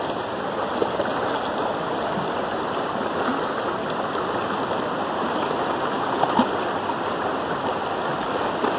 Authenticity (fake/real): real